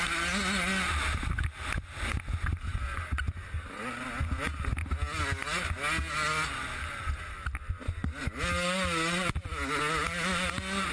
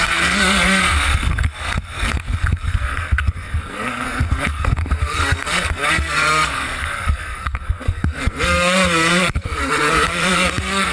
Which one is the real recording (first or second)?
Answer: first